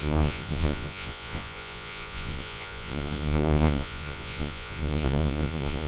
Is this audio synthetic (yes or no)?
yes